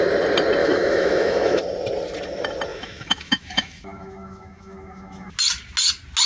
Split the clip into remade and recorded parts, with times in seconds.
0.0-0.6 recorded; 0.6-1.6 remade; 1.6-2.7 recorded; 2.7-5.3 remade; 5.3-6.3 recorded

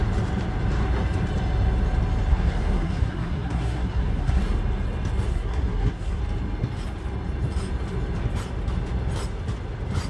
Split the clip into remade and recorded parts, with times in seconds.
0.0-2.3 recorded; 2.3-4.4 remade; 4.4-5.3 recorded; 5.3-6.2 remade; 6.2-10.1 recorded